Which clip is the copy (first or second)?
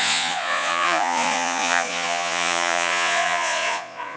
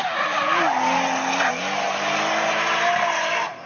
first